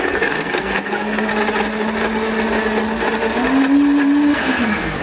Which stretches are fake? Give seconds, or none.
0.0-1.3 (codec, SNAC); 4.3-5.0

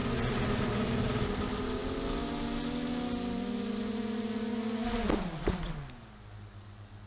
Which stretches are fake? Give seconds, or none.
none

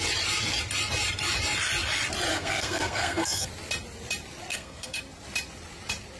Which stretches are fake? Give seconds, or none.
2.3-3.5 (codec, SNAC); 4.5-5.0

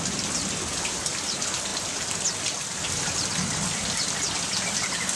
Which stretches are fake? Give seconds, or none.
none

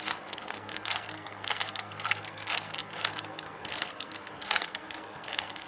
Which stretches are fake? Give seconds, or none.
0.0-5.7 (codec, SNAC)